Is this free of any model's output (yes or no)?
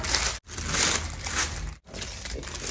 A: yes